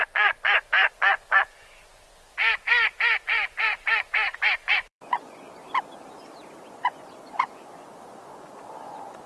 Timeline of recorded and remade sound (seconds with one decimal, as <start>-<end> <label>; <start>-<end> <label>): 0.0-2.5 remade; 2.5-3.2 recorded; 3.2-5.6 remade; 5.6-6.6 recorded; 6.6-9.3 remade